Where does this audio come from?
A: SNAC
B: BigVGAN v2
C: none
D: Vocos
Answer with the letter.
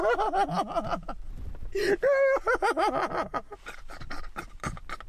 C